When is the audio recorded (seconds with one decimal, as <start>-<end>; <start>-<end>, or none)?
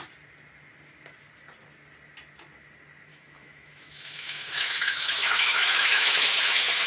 0.0-3.1